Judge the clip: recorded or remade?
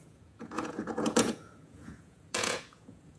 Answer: remade